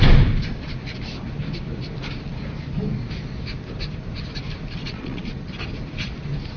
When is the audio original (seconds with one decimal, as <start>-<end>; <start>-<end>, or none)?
0.0-4.8; 5.3-6.6